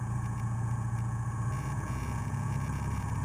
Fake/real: fake